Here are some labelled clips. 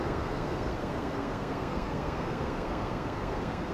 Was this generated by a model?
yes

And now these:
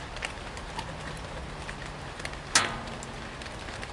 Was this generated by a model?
no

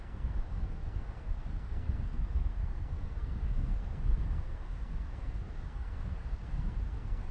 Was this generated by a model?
yes